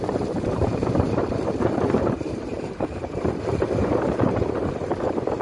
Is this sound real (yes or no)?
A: no